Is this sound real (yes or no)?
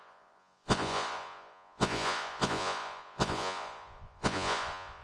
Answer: no